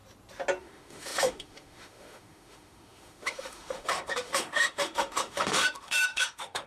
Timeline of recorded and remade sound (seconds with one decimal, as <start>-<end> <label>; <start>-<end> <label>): 0.0-0.6 recorded; 0.6-6.7 remade